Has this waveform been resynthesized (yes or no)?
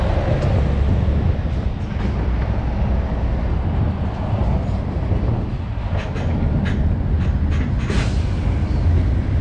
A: no